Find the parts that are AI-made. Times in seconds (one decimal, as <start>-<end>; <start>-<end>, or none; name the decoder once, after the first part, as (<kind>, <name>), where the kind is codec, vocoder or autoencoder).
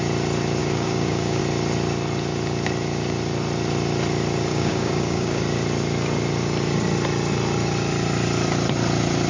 0.6-1.4 (codec, DAC); 4.5-5.4